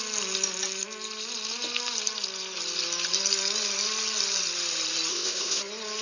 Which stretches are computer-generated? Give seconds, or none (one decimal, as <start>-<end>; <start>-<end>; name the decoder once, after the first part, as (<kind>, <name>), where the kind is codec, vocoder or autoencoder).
5.1-5.6 (codec, ZipCodec)